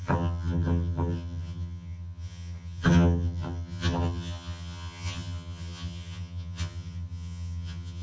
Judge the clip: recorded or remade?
remade